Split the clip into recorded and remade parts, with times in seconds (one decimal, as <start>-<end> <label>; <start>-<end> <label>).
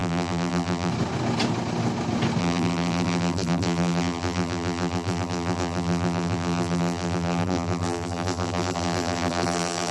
0.0-0.9 remade; 0.9-2.4 recorded; 2.4-9.9 remade